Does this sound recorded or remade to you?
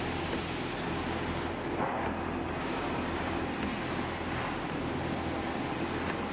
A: recorded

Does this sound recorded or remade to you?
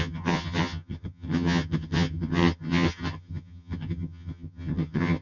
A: remade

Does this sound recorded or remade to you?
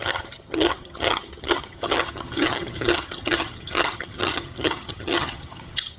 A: remade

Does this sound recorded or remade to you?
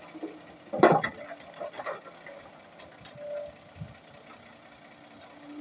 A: recorded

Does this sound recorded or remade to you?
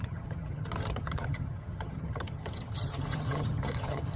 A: remade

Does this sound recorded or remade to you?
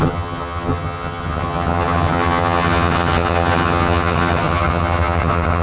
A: remade